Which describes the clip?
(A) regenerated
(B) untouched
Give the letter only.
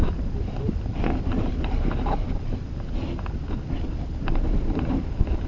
B